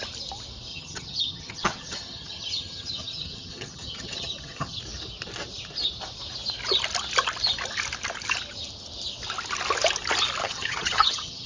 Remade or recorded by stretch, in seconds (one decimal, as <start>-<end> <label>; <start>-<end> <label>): 0.0-0.7 recorded; 0.7-4.8 remade; 4.8-10.4 recorded; 10.4-11.5 remade